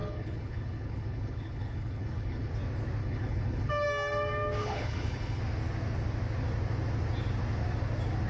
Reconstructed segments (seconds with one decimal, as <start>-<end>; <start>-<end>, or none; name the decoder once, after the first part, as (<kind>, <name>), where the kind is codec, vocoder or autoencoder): 0.0-2.5 (codec, HILCodec); 3.0-3.7; 4.6-5.4